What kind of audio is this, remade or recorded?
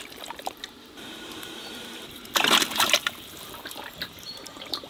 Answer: remade